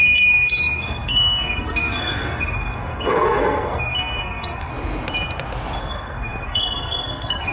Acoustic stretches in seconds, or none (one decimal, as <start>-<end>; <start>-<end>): 4.7-5.8